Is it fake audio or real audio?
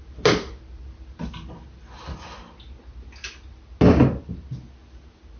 real